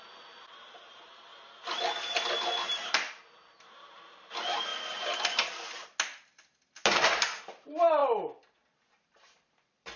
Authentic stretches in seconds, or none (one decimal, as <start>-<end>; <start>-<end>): 1.3-2.1; 4.7-7.4; 8.0-8.8